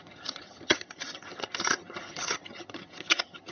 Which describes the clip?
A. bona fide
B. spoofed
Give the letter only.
B